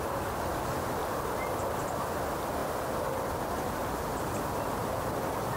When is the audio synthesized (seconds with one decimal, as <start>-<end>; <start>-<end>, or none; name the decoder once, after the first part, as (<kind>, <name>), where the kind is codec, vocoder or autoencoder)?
1.0-1.8 (vocoder, BigVGAN v2); 2.6-5.1